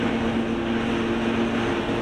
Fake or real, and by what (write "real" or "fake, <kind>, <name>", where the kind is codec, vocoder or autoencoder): real